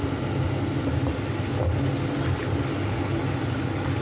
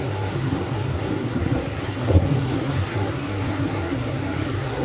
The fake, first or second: second